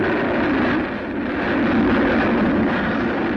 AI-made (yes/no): no